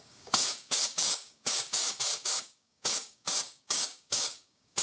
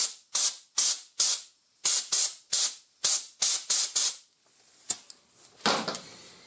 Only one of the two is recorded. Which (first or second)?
second